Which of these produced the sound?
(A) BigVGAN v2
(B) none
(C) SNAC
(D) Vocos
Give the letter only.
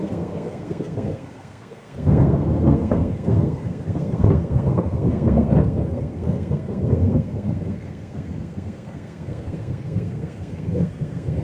C